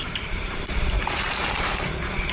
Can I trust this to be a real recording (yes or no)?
no